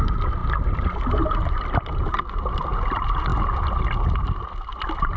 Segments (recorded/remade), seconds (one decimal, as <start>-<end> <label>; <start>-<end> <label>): 0.0-5.2 recorded